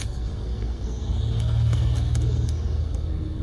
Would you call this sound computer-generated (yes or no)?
yes